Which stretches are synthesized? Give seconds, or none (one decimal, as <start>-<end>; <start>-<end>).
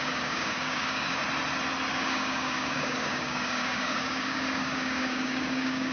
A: 0.0-1.2; 1.9-5.9